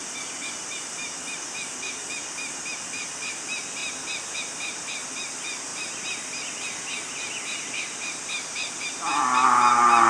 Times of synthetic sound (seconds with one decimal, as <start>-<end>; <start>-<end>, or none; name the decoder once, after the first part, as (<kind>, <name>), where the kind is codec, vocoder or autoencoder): 5.7-8.7 (vocoder, BigVGAN v2)